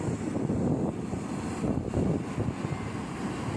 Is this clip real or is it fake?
real